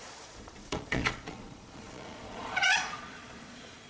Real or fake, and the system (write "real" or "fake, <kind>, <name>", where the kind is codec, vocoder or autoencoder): fake, vocoder, Vocos